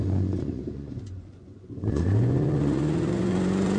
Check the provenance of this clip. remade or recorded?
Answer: remade